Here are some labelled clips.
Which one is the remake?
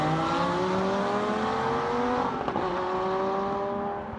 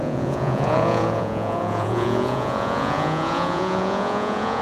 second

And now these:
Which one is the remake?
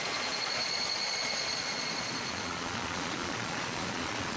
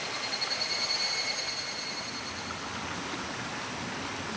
first